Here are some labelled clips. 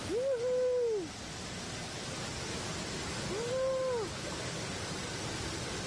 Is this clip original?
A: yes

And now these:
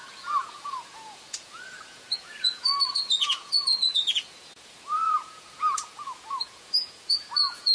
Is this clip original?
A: no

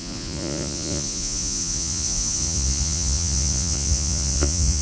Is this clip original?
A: no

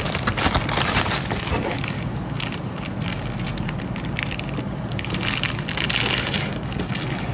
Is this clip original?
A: yes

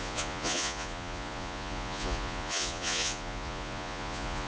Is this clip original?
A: no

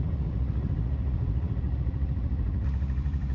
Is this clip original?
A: no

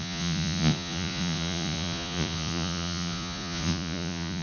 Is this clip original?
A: no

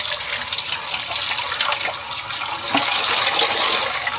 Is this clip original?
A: yes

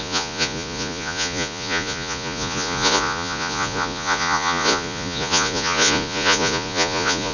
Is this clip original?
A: no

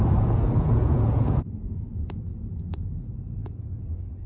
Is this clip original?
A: no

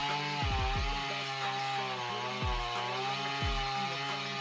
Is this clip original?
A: yes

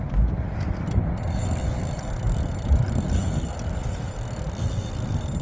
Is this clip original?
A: yes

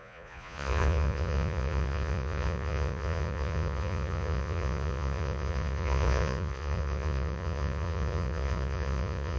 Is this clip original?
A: no